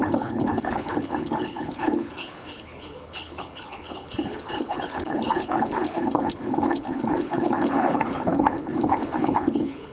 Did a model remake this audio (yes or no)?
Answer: yes